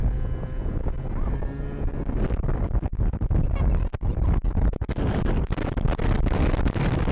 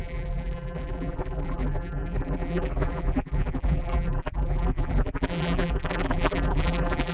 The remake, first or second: second